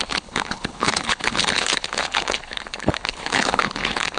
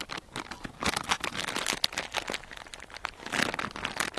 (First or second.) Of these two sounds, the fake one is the first